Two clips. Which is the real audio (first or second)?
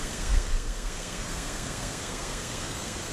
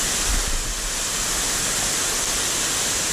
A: second